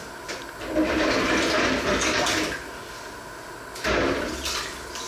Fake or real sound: real